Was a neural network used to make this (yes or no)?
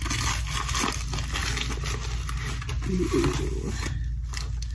no